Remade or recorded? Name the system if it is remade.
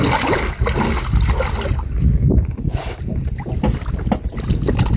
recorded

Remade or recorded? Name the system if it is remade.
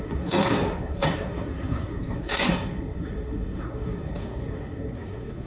remade, codec, SNAC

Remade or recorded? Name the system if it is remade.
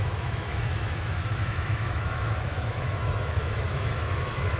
remade, autoencoder, DAC-VAE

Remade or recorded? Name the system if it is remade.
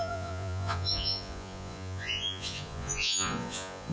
remade, vocoder, Vocos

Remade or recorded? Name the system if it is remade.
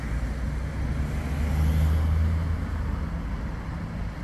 recorded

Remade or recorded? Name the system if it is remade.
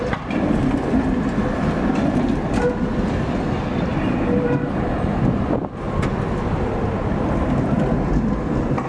recorded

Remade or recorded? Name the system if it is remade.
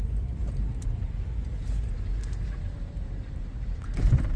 remade, vocoder, BigVGAN v2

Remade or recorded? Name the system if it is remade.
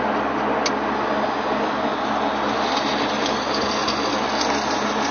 recorded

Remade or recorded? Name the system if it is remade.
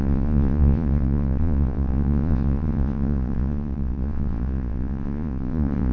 remade, vocoder, Vocos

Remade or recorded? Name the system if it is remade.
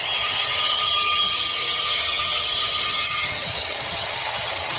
remade, vocoder, HiFi-GAN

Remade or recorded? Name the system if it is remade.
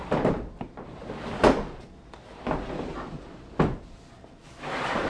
recorded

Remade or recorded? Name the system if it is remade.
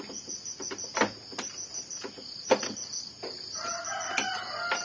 recorded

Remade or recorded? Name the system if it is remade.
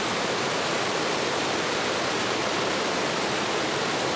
remade, vocoder, BigVGAN v2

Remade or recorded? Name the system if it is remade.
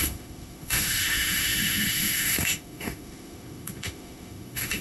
remade, autoencoder, DAC-VAE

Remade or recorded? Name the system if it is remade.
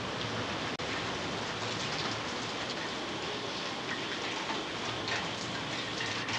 recorded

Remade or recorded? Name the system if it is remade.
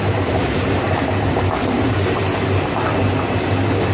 remade, vocoder, BigVGAN v2